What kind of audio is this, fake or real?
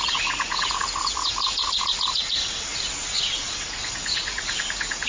fake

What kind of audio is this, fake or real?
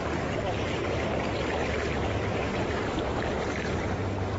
fake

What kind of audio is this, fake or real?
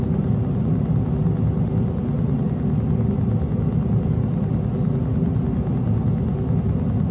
real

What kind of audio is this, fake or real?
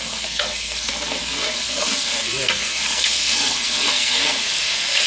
fake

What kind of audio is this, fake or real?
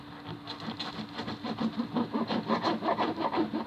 real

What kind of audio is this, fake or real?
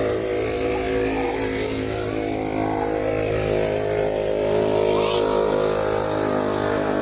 real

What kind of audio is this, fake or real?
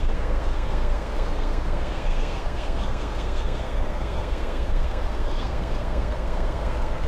fake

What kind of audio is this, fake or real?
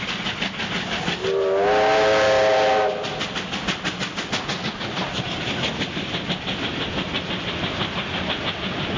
real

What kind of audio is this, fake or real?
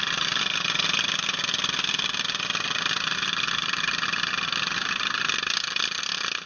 real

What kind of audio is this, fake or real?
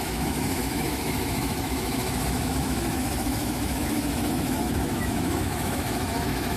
fake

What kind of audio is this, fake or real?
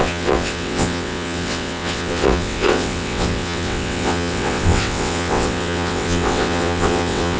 fake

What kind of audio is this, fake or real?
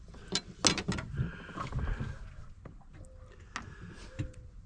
real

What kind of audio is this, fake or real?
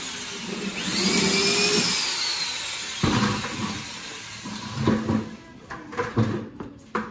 real